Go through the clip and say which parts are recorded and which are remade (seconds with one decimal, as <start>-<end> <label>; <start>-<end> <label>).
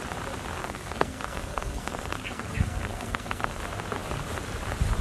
0.0-0.6 recorded; 0.6-3.6 remade; 3.6-5.0 recorded